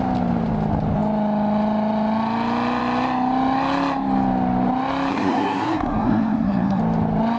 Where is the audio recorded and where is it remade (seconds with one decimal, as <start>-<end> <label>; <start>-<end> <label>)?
0.0-5.1 recorded; 5.1-6.8 remade; 6.8-7.4 recorded